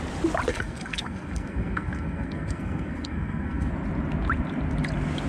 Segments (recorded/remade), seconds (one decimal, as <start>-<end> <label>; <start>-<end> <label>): 0.0-0.5 recorded; 0.5-3.7 remade; 3.7-5.3 recorded